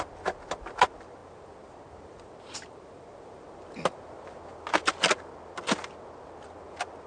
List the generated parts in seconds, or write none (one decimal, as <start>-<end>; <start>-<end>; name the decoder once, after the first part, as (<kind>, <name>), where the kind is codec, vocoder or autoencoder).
none